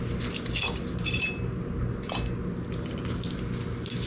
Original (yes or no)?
yes